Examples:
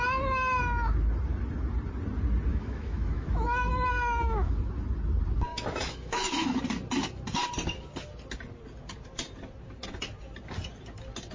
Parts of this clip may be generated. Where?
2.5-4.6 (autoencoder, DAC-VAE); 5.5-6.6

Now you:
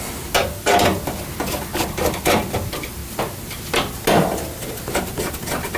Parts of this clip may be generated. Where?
none

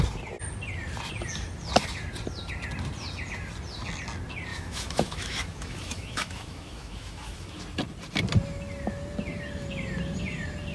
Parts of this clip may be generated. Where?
4.5-7.6 (autoencoder, DAC-VAE)

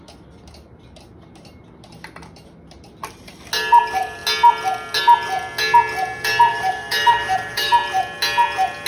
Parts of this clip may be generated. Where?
6.5-7.7 (autoencoder, DAC-VAE)

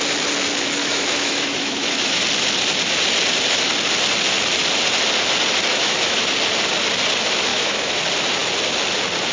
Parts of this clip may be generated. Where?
0.8-2.2 (autoencoder, DAC-VAE); 5.7-6.2; 7.5-8.0

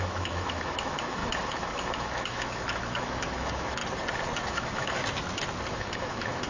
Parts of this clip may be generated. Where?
0.0-3.8 (autoencoder, DAC-VAE); 4.5-5.0; 5.7-6.5

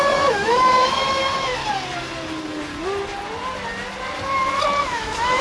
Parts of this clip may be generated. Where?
0.0-1.6 (autoencoder, DAC-VAE); 4.8-5.4

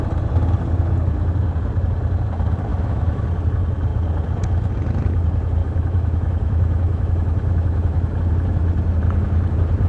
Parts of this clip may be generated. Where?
2.7-3.2 (autoencoder, DAC-VAE); 5.6-8.2